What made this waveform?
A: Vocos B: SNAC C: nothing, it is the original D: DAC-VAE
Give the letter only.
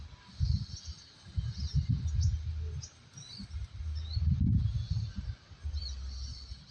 C